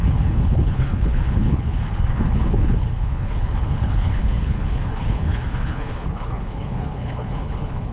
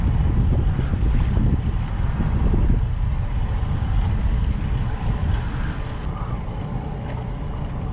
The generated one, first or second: first